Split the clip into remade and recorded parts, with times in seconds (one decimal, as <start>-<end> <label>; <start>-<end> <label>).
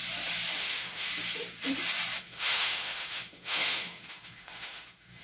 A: 0.0-0.6 recorded; 0.6-1.1 remade; 1.1-2.2 recorded; 2.2-5.2 remade